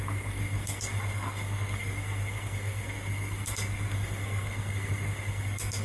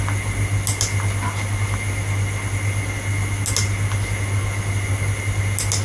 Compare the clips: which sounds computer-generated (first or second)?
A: first